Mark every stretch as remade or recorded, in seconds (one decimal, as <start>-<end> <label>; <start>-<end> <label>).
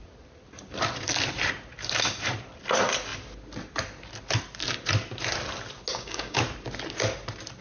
0.0-5.9 recorded; 5.9-6.4 remade; 6.4-7.6 recorded